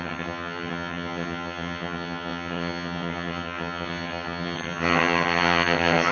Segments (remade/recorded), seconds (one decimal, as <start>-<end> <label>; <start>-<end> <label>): 0.0-6.1 remade